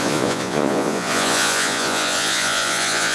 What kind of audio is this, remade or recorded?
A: remade